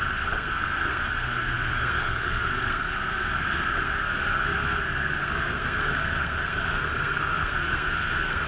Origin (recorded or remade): remade